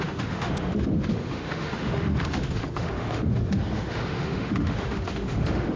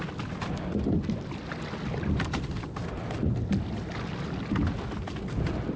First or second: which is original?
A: second